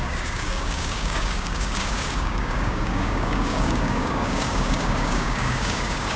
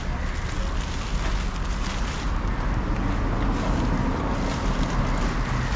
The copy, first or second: first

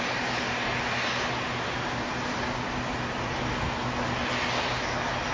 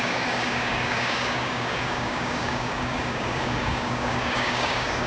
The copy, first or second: second